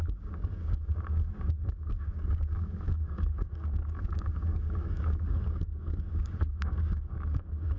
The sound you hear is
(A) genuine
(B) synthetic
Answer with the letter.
B